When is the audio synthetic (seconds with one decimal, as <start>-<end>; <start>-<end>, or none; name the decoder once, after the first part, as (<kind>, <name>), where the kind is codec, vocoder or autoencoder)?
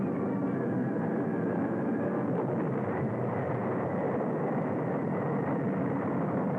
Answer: none